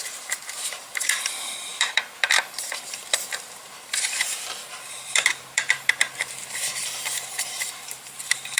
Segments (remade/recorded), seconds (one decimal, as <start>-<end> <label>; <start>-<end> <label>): 0.0-8.6 remade